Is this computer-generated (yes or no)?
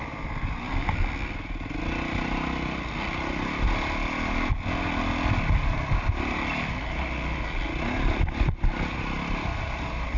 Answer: no